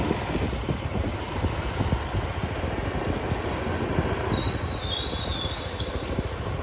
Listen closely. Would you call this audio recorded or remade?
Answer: recorded